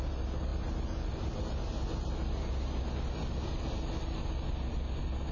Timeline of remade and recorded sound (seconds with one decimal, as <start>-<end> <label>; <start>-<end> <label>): 0.0-5.3 recorded